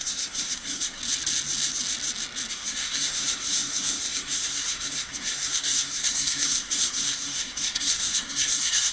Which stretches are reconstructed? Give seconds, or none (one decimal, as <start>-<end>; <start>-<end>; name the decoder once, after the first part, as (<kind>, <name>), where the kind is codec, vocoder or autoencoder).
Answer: 0.0-1.0 (codec, SNAC); 2.5-8.9